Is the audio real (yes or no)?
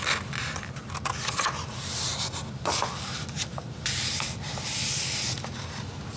yes